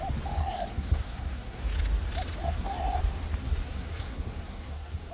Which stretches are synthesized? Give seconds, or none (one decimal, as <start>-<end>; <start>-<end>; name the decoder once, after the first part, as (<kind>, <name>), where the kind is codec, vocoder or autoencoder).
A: 0.4-1.6 (codec, SNAC); 2.4-3.0; 3.4-5.1